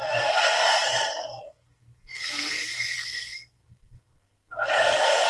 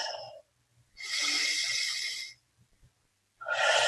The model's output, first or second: first